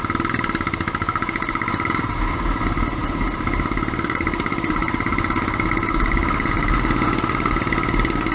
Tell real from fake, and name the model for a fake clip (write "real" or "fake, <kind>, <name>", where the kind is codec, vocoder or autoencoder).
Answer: real